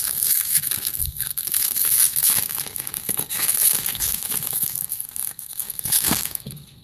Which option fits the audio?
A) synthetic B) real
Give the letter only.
A